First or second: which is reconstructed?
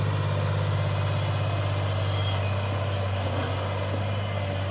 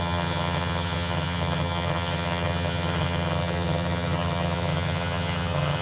second